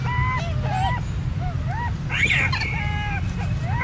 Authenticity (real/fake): real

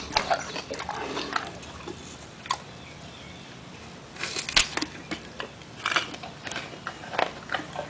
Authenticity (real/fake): real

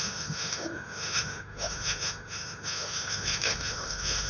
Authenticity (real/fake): fake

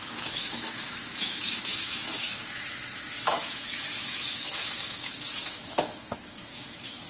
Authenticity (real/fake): fake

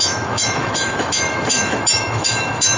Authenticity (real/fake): fake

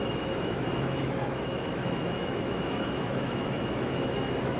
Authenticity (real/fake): fake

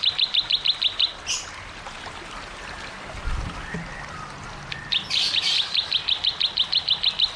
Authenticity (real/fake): real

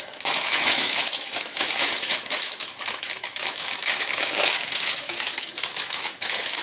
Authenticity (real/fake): fake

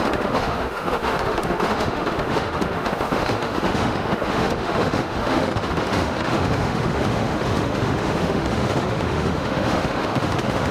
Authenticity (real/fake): fake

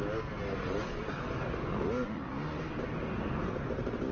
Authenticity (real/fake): real